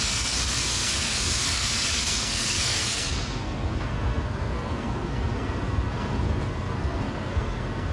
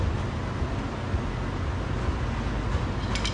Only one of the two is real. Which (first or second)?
second